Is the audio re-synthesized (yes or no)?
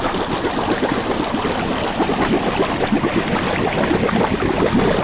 no